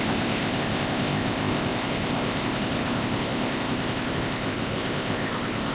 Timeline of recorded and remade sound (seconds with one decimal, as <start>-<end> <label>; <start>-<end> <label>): 0.0-5.7 remade